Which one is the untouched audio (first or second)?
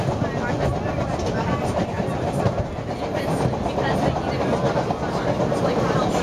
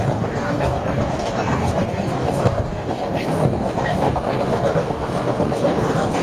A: first